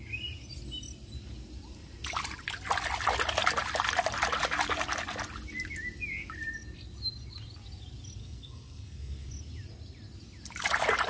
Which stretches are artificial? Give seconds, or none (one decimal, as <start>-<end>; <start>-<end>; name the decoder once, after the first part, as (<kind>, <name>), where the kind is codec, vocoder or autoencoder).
8.2-9.3 (codec, SNAC)

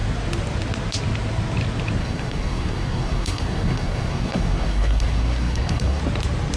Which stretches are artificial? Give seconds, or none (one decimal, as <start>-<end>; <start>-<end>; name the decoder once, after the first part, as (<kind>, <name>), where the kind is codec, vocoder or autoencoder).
2.0-6.0 (codec, SNAC)

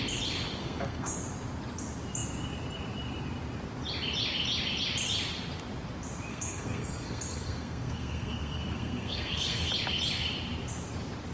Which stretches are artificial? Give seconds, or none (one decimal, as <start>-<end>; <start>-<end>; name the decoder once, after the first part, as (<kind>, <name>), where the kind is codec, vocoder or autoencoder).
0.6-1.2 (codec, SNAC); 6.3-9.7

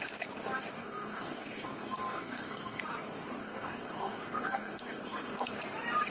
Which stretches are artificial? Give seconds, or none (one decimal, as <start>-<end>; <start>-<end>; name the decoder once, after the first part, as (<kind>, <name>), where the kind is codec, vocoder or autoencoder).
0.8-2.8 (codec, SNAC); 3.4-5.6